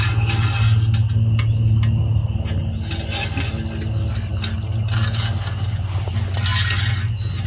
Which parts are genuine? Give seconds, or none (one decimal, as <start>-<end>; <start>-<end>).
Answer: 0.0-7.5